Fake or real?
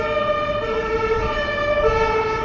real